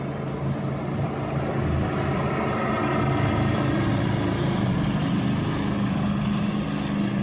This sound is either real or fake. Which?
real